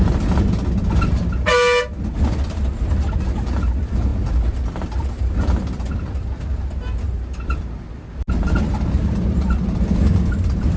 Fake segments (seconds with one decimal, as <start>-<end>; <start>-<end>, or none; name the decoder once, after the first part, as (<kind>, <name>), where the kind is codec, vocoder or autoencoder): none